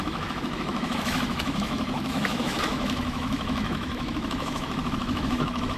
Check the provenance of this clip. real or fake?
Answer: fake